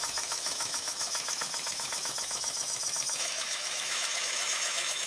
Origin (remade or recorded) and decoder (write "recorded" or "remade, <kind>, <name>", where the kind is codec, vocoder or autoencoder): remade, autoencoder, DAC-VAE